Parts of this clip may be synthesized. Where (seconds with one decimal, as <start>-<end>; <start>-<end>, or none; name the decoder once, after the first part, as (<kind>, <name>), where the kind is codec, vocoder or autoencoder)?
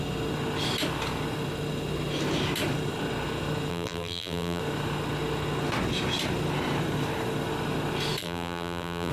3.7-4.6 (vocoder, BigVGAN v2); 8.2-9.1